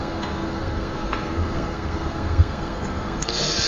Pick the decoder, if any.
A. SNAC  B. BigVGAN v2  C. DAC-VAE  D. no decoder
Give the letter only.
A